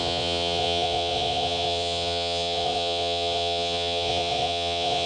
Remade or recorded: remade